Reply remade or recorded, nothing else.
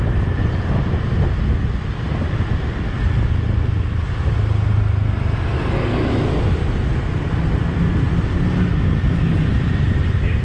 recorded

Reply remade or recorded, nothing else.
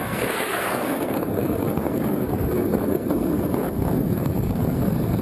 remade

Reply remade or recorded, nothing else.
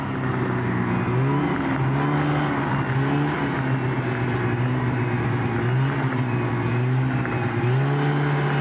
recorded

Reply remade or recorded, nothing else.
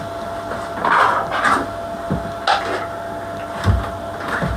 recorded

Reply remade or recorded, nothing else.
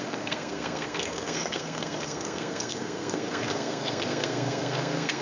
remade